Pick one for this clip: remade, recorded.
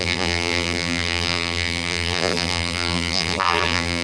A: remade